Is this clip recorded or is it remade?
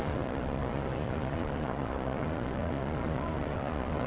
remade